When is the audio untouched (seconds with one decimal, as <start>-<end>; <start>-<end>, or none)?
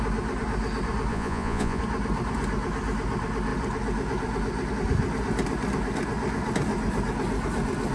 0.0-1.1; 1.8-7.9